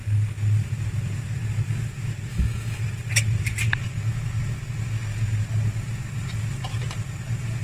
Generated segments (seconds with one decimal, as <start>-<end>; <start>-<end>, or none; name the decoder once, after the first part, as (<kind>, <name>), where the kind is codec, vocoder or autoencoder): 2.3-2.8 (autoencoder, DAC-VAE)